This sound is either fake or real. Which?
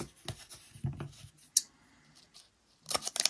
real